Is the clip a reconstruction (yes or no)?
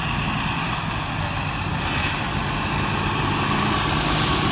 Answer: no